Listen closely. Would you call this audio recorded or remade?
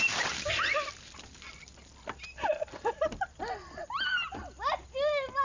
recorded